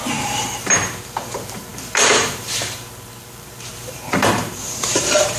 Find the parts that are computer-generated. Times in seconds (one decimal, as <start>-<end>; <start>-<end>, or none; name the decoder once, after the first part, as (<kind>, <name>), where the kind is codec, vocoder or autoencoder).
0.0-5.4 (vocoder, BigVGAN v2)